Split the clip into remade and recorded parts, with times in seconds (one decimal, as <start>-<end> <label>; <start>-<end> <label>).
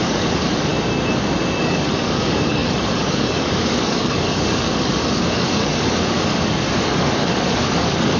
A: 0.0-0.7 remade; 0.7-1.6 recorded; 1.6-8.2 remade